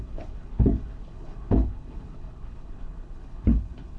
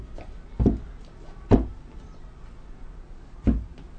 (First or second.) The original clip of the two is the second